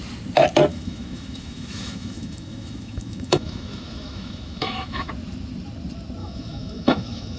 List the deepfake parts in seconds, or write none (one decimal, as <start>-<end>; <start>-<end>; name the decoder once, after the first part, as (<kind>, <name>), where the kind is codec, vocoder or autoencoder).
0.7-5.1 (autoencoder, DAC-VAE); 6.2-7.4